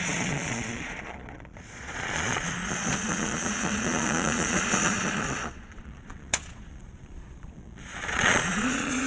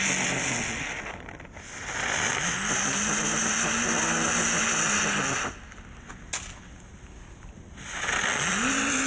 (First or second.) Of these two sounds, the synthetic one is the first